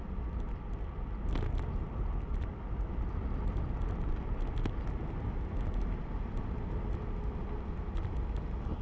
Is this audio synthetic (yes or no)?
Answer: no